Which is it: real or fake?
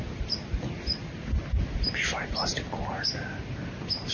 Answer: real